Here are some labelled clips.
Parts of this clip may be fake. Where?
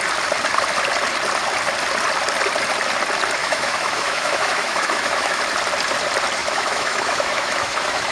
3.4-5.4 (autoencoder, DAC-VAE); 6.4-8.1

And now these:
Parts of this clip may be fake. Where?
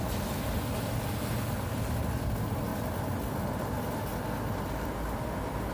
none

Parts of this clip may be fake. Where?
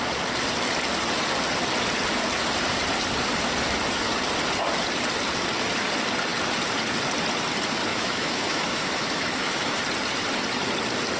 7.9-9.8 (autoencoder, DAC-VAE)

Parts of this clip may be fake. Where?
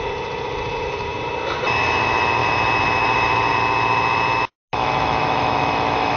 4.8-6.2 (autoencoder, DAC-VAE)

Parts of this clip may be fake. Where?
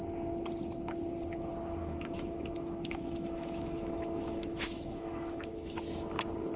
1.8-5.8 (autoencoder, DAC-VAE)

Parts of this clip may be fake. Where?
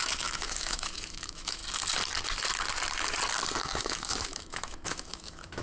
0.0-1.6 (autoencoder, DAC-VAE); 3.6-5.6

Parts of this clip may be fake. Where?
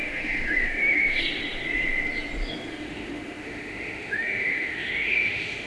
0.0-1.2 (autoencoder, DAC-VAE); 2.7-5.7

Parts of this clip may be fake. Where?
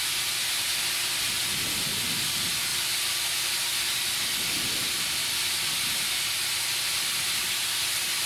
none